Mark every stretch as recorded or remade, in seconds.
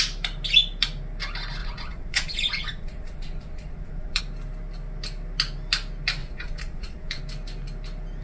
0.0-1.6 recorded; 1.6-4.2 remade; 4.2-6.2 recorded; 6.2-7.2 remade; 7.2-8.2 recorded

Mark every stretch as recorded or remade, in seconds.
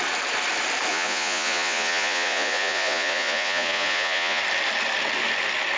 0.0-0.9 recorded; 0.9-4.4 remade; 4.4-5.8 recorded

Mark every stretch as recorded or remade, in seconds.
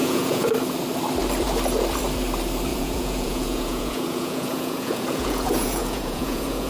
0.0-0.5 remade; 0.5-2.7 recorded; 2.7-6.7 remade